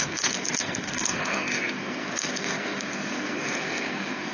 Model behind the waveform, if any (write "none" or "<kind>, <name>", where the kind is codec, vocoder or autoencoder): codec, SNAC